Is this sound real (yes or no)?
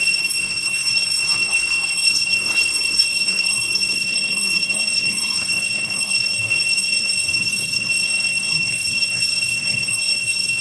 no